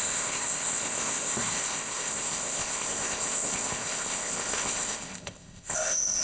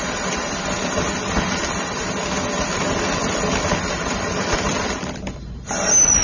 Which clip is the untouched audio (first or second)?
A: second